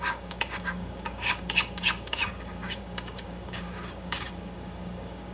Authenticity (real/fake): fake